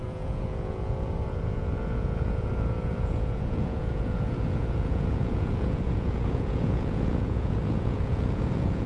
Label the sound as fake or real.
fake